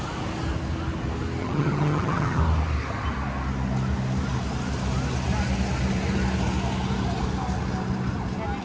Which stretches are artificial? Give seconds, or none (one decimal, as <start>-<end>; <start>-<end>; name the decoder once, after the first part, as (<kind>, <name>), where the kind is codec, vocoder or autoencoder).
1.4-2.4 (vocoder, HiFi-GAN)